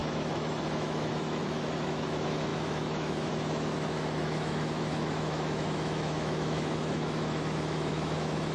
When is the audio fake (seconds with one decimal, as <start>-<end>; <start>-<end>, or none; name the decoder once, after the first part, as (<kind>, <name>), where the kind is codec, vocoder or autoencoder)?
0.0-8.5 (autoencoder, DAC-VAE)